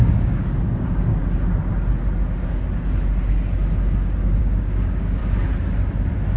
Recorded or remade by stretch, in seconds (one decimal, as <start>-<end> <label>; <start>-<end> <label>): 0.0-1.2 remade; 1.2-4.4 recorded; 4.4-5.2 remade; 5.2-6.4 recorded